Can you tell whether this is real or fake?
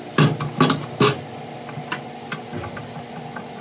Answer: real